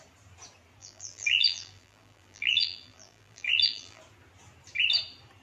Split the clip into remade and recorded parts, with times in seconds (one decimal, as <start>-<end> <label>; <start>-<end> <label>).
0.0-0.8 recorded; 0.8-4.0 remade; 4.0-5.4 recorded